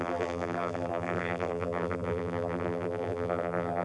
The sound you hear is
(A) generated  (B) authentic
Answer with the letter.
A